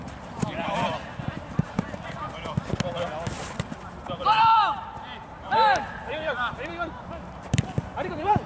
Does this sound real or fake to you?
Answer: fake